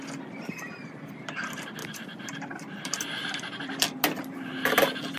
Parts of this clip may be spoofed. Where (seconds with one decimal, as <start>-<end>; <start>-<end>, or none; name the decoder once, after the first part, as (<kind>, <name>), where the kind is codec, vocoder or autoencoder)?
1.8-3.9 (vocoder, BigVGAN v2)